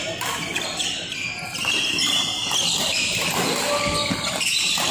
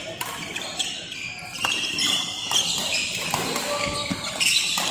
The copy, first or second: second